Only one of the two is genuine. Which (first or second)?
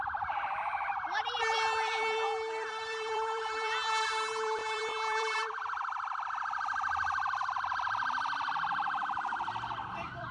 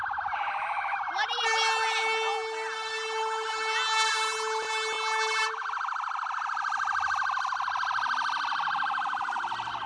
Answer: second